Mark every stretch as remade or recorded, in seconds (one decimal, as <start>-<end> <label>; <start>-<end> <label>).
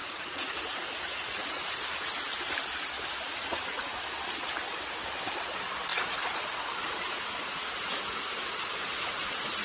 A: 0.0-1.7 remade; 1.7-3.4 recorded; 3.4-4.0 remade; 4.0-5.9 recorded; 5.9-9.6 remade